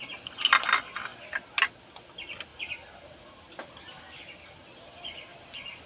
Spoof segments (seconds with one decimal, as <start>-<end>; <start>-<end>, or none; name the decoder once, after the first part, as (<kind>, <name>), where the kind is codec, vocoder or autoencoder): none